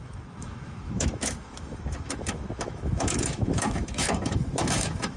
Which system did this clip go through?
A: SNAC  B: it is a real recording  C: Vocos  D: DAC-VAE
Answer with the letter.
D